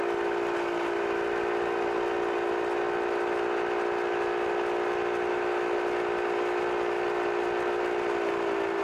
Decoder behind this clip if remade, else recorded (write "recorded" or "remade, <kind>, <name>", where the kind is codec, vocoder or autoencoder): recorded